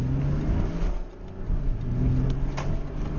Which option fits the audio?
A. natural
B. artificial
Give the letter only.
A